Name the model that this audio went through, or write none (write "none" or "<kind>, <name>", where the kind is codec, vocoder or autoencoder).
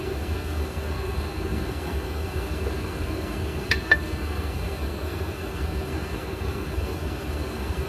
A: codec, SNAC